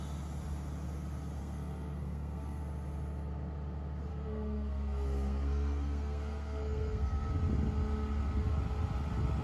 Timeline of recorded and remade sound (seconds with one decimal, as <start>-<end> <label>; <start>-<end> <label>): 0.0-1.4 recorded; 1.4-2.6 remade; 2.6-4.1 recorded; 4.1-7.3 remade; 7.3-9.4 recorded